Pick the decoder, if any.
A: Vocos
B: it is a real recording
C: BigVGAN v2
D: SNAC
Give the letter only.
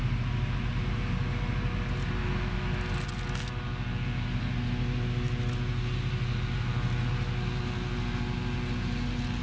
B